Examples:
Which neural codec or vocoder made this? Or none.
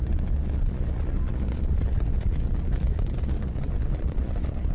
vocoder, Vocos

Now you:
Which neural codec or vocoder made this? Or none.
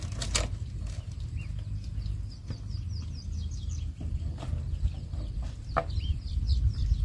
none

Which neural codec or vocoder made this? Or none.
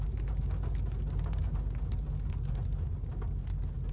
none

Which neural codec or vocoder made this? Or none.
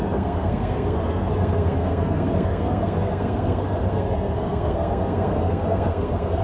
codec, SNAC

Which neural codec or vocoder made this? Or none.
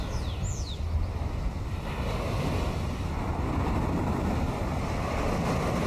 none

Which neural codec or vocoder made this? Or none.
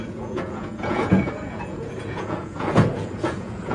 vocoder, Vocos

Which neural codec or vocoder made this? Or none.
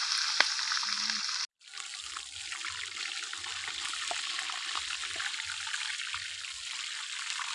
none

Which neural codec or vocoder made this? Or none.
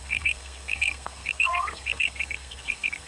codec, SNAC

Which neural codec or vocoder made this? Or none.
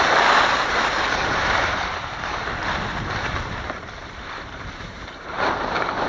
vocoder, BigVGAN v2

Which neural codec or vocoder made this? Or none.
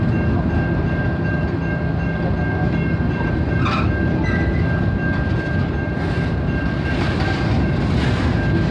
none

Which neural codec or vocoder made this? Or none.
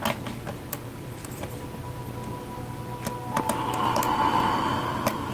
none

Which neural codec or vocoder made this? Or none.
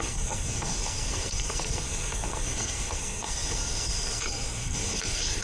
codec, SNAC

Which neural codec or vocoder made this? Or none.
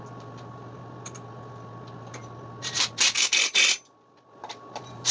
none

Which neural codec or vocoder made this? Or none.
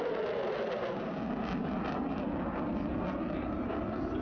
none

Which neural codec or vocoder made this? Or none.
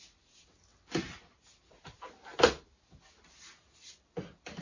none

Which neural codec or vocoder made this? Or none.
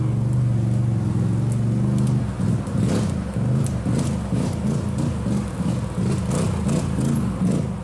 none